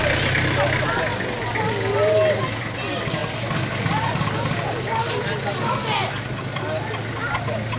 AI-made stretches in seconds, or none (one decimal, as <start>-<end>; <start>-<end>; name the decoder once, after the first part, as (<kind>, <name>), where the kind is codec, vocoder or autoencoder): none